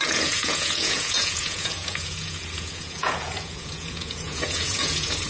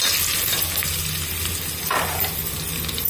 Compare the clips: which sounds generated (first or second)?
first